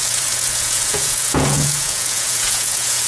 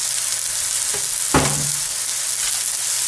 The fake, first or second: first